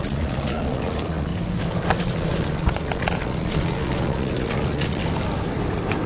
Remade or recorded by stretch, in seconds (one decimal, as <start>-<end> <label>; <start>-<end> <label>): 0.0-1.3 remade; 1.3-2.0 recorded; 2.0-5.0 remade; 5.0-6.1 recorded